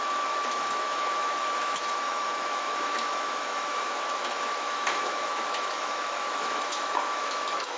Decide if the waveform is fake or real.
fake